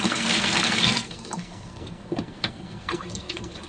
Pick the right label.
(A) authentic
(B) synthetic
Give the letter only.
B